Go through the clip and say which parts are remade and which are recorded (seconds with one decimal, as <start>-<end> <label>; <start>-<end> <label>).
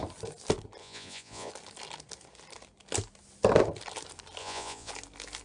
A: 0.0-0.8 recorded; 0.8-1.5 remade; 1.5-4.4 recorded; 4.4-4.9 remade; 4.9-5.4 recorded